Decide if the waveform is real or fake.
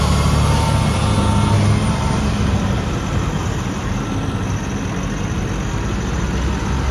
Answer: real